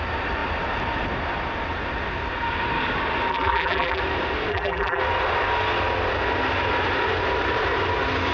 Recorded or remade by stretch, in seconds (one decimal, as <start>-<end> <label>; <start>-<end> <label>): 0.0-3.3 recorded; 3.3-4.0 remade; 4.0-4.5 recorded; 4.5-5.0 remade; 5.0-8.3 recorded